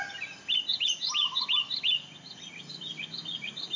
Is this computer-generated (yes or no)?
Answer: no